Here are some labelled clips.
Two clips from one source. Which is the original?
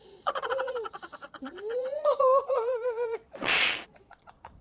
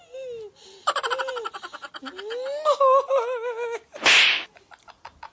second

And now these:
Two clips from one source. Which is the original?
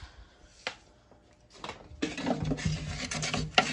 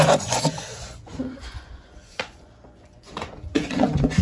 first